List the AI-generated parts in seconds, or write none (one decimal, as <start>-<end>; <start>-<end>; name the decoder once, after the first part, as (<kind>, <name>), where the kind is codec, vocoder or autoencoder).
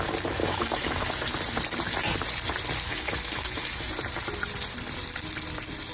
0.4-1.1 (autoencoder, DAC-VAE); 2.9-3.8